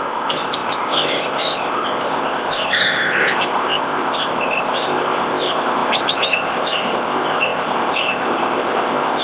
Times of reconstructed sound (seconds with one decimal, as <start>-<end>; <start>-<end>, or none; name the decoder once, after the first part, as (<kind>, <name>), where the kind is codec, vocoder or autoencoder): 0.0-9.2 (codec, ZipCodec)